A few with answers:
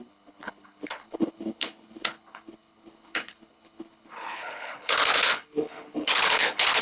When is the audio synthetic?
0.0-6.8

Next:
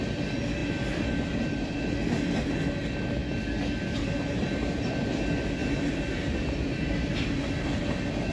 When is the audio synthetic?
0.6-1.4

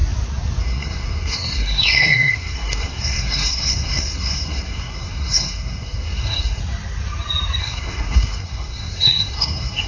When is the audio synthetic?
0.6-6.6; 7.6-9.9

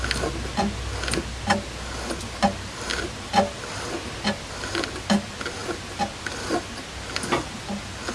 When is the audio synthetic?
2.9-4.4

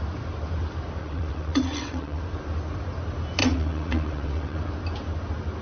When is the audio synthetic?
1.0-2.2; 3.4-4.7